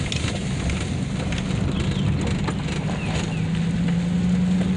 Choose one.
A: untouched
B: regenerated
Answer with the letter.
A